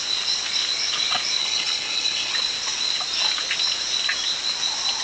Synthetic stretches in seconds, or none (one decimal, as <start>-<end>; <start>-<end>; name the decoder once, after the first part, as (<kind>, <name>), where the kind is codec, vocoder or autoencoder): 1.4-2.3 (codec, HILCodec)